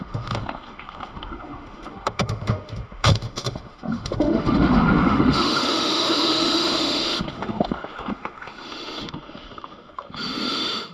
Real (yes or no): no